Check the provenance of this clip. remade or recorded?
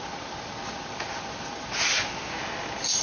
recorded